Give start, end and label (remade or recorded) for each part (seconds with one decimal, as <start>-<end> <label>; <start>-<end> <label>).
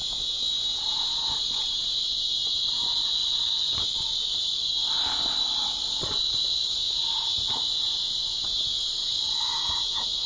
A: 0.0-3.2 recorded; 3.2-7.5 remade; 7.5-10.3 recorded